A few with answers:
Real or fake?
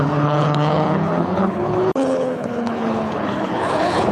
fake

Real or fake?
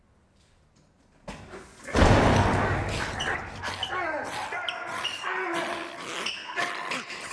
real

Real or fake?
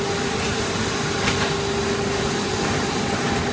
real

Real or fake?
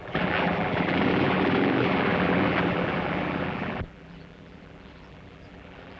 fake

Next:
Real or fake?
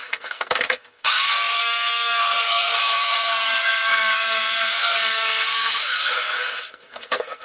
fake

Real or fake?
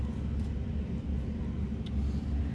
real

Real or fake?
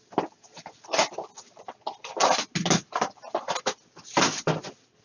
real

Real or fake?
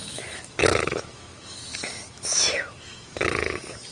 fake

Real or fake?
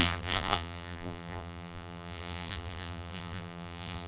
fake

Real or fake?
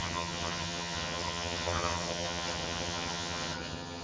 fake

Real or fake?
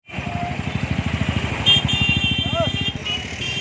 real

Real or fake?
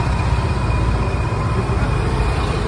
real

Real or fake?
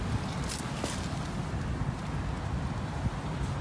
real